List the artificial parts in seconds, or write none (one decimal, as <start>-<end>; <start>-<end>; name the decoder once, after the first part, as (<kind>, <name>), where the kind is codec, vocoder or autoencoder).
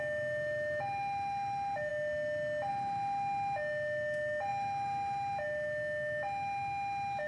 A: none